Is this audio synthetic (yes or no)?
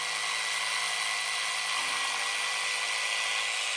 no